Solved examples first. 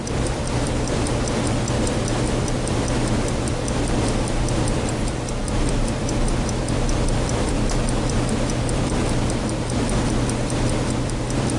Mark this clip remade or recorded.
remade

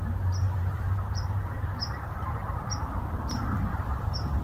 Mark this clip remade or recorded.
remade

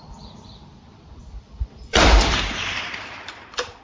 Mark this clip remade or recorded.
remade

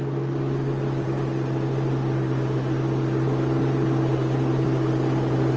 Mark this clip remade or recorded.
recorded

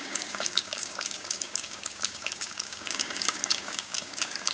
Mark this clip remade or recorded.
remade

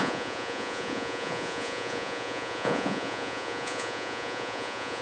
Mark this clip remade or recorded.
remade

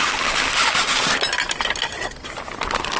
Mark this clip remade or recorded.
recorded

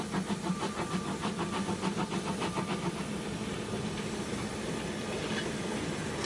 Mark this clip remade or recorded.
recorded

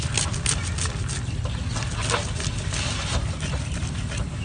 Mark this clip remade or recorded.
recorded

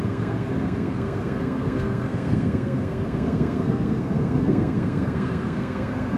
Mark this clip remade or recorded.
remade